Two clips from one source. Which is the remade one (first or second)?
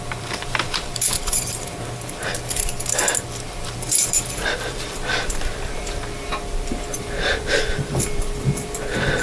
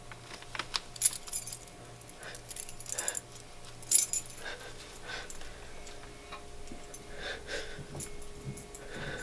first